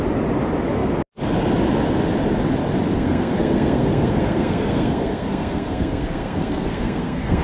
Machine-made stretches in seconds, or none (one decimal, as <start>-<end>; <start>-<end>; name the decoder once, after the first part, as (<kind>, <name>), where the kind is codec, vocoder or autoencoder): 2.9-7.4 (codec, SNAC)